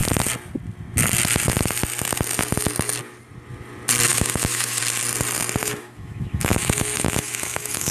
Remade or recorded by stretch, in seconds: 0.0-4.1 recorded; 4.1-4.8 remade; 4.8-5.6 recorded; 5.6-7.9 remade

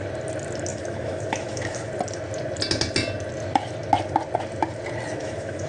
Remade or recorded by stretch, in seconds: 0.0-0.7 recorded; 0.7-1.9 remade; 1.9-5.2 recorded; 5.2-5.7 remade

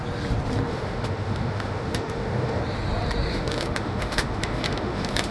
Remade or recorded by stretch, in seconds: 0.0-0.7 recorded; 0.7-2.6 remade; 2.6-3.3 recorded; 3.3-5.3 remade